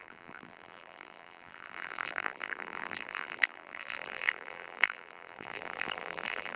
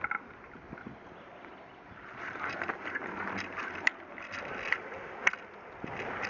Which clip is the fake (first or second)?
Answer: first